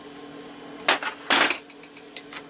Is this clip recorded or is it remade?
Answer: recorded